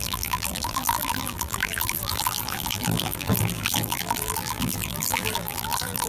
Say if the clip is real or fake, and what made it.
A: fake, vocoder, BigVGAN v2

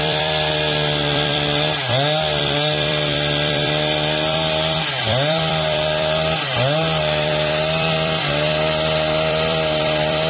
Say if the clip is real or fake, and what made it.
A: fake, vocoder, BigVGAN v2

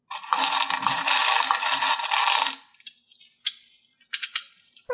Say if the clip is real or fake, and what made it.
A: real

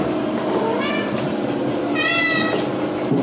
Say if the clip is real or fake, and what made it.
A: real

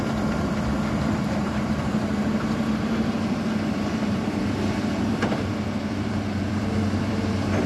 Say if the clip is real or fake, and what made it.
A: fake, vocoder, BigVGAN v2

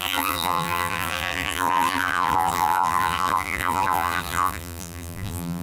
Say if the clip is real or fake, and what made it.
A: fake, vocoder, BigVGAN v2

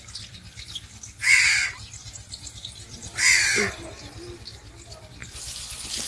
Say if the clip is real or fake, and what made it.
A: fake, vocoder, BigVGAN v2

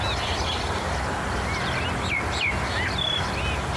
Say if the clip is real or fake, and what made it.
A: fake, vocoder, BigVGAN v2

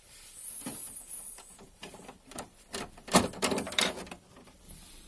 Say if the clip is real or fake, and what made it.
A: fake, vocoder, BigVGAN v2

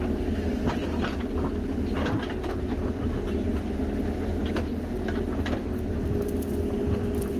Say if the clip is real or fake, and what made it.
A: real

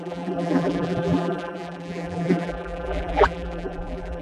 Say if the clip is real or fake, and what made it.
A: fake, vocoder, BigVGAN v2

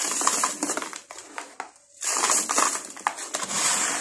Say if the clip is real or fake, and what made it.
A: fake, vocoder, BigVGAN v2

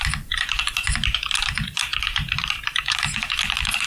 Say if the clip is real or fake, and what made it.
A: fake, vocoder, BigVGAN v2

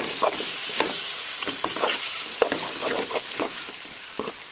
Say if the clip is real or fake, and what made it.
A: real